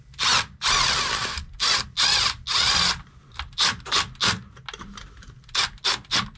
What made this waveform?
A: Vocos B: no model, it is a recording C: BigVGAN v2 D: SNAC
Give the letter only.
B